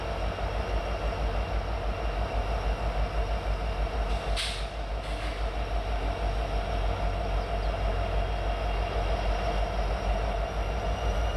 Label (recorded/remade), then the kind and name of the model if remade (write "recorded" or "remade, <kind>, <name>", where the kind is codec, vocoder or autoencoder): recorded